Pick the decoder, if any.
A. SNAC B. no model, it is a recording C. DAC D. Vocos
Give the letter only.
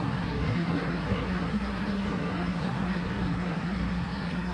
A